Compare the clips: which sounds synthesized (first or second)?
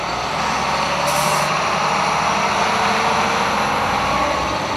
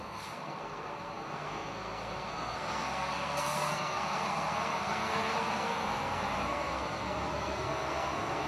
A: second